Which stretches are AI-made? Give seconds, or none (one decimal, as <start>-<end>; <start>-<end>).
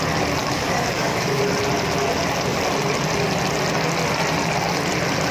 0.4-1.4